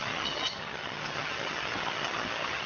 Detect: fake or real fake